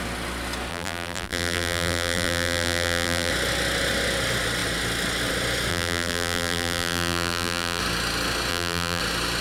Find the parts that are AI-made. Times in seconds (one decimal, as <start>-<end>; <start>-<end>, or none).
0.7-3.3; 5.7-7.8; 8.5-9.0

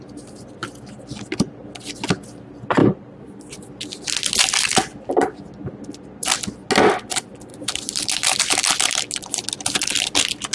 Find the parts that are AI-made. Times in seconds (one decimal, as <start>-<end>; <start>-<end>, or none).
2.8-3.5; 7.5-8.4

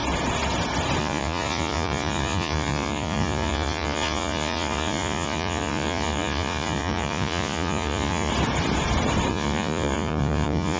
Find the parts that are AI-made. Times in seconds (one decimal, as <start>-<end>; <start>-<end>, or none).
1.0-8.3; 9.3-10.8

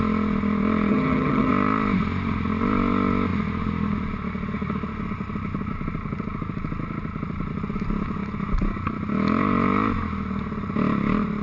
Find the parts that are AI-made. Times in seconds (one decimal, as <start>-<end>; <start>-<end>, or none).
0.9-1.5

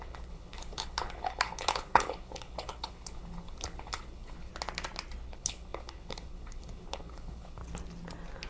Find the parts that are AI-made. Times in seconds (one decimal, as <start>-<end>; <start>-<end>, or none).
0.0-4.5; 5.2-7.6